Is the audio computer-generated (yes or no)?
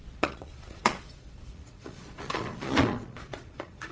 yes